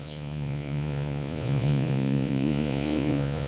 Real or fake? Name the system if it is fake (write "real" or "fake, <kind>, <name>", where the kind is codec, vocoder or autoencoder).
fake, vocoder, Vocos